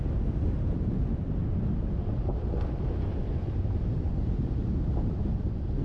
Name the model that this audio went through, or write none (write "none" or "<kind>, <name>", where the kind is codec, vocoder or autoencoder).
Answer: vocoder, BigVGAN v2